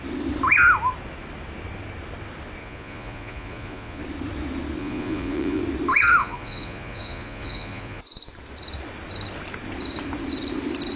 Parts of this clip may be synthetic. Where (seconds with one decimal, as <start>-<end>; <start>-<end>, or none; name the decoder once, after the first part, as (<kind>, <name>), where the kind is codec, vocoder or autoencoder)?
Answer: 2.6-4.0 (vocoder, Vocos); 4.8-5.6; 6.2-8.0